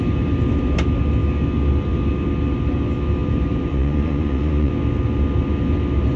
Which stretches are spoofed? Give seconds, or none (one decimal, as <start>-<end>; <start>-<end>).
3.7-4.7